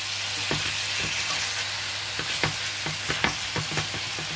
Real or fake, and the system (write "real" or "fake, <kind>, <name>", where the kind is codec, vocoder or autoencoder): real